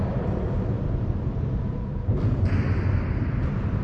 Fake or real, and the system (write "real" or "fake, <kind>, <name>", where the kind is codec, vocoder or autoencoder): real